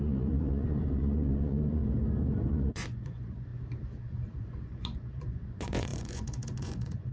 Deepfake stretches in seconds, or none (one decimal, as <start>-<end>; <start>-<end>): 0.0-1.8; 2.5-3.5; 4.1-7.1